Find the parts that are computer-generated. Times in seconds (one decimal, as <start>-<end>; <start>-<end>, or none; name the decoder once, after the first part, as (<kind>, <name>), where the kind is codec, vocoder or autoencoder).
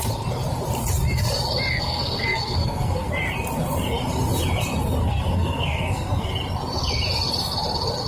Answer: 1.7-3.1 (codec, SNAC); 5.0-6.3